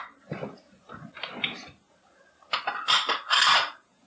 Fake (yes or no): no